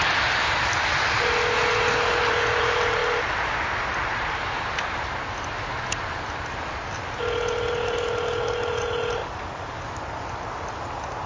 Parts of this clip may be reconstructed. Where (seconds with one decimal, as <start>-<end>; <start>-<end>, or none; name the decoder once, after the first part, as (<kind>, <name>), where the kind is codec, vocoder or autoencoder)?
none